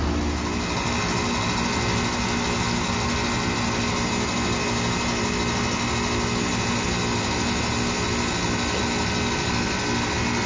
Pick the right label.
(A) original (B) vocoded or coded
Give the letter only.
A